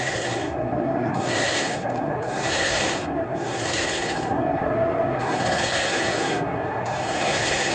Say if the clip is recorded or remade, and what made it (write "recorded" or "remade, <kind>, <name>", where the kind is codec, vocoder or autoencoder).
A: remade, codec, SNAC